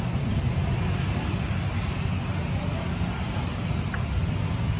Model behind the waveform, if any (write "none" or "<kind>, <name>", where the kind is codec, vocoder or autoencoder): none